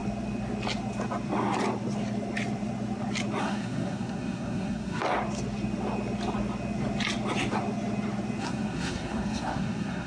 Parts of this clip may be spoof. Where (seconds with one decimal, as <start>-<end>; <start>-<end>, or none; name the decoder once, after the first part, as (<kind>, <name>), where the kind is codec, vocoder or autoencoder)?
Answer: 3.4-5.0 (codec, SNAC); 8.4-10.1